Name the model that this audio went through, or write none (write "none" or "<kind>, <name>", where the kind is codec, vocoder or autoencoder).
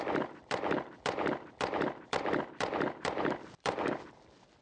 vocoder, BigVGAN v2